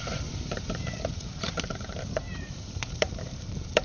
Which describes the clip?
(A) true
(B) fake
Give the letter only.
B